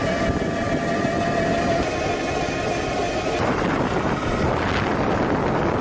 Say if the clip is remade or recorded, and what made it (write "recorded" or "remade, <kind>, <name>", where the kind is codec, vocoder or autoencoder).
recorded